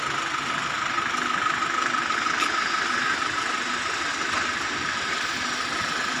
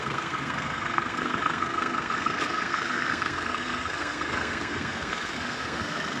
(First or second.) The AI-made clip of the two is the second